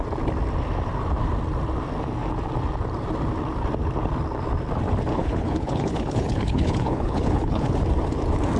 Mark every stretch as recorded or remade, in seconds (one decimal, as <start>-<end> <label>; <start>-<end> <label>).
0.0-5.1 recorded; 5.1-7.7 remade; 7.7-8.6 recorded